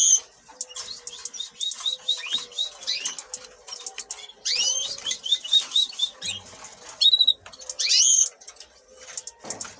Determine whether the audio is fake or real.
real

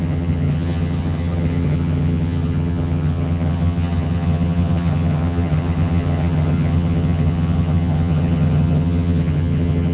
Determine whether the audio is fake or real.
fake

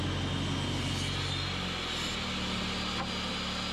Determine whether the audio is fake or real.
real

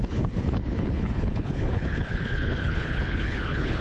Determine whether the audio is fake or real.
fake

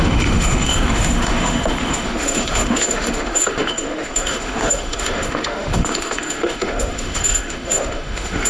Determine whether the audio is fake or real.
fake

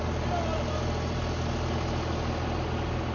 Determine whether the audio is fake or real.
real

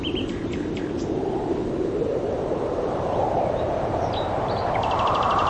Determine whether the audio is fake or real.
fake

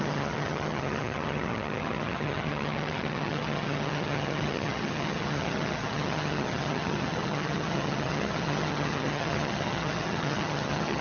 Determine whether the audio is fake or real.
fake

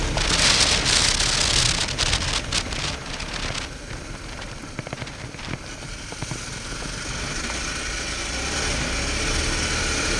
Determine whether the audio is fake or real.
real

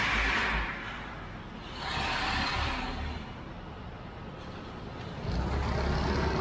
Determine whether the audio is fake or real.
real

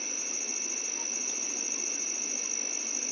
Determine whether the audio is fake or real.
real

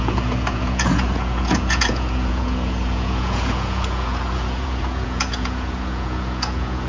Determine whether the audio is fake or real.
fake